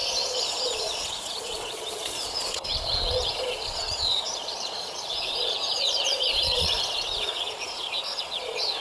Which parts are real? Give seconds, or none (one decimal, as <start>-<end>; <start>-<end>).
none